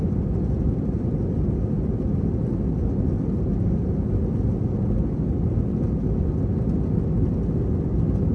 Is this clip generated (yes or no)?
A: no